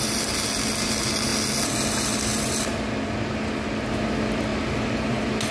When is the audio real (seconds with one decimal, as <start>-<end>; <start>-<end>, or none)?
0.0-5.5